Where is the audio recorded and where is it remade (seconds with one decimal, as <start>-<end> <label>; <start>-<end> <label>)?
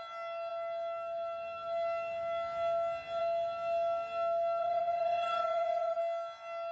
0.0-4.6 recorded; 4.6-6.0 remade; 6.0-6.7 recorded